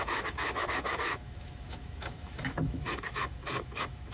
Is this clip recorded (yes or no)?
no